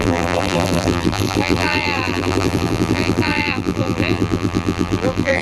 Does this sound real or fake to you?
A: fake